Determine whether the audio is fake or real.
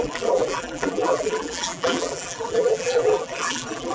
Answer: fake